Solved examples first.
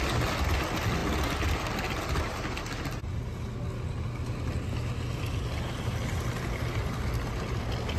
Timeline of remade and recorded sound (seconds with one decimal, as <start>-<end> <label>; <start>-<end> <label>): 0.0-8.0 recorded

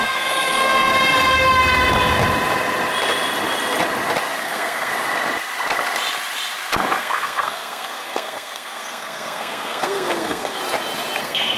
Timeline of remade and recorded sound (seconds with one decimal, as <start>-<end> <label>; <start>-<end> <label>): 0.0-0.9 remade; 0.9-4.4 recorded; 4.4-4.9 remade; 4.9-7.0 recorded; 7.0-10.6 remade; 10.6-11.2 recorded; 11.2-11.6 remade

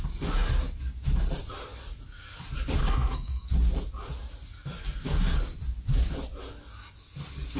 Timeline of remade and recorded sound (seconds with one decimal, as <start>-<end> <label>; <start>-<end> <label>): 0.0-2.8 recorded; 2.8-3.5 remade; 3.5-7.6 recorded

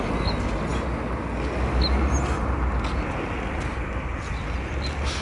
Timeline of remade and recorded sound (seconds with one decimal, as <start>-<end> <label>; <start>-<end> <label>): 0.0-5.2 recorded